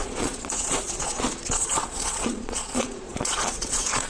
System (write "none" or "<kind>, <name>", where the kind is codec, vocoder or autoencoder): vocoder, Vocos